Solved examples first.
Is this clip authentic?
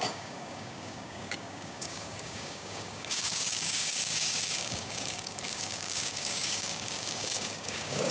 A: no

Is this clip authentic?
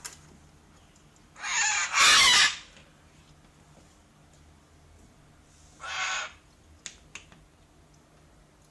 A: yes